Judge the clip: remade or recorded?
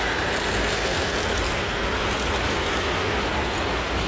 recorded